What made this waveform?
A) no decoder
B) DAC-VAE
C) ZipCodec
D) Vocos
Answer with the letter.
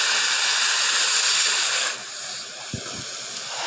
A